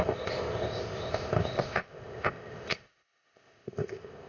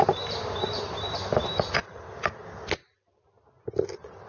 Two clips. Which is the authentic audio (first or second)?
second